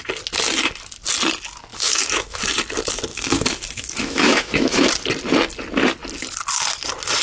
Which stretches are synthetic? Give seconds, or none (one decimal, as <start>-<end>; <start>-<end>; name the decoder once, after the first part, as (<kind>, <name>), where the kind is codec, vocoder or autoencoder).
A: 1.7-2.4 (autoencoder, DAC-VAE); 3.1-4.9